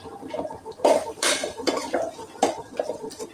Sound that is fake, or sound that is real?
fake